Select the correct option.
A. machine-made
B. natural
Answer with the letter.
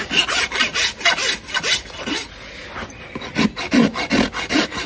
B